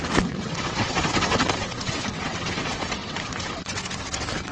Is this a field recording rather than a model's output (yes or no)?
no